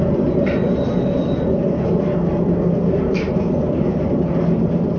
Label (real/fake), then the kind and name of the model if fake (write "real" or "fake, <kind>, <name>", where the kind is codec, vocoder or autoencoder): real